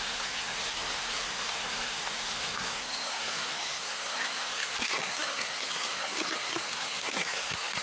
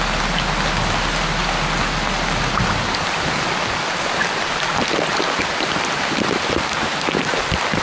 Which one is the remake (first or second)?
first